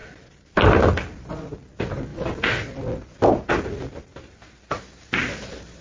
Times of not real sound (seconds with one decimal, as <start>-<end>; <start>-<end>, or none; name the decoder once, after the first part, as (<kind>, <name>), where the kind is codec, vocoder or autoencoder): none